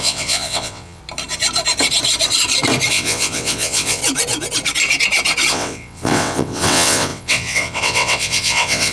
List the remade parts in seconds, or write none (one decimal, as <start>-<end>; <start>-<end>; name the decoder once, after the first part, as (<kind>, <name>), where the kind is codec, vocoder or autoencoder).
0.0-1.0 (vocoder, WaveNeXt); 2.9-4.0; 5.5-8.9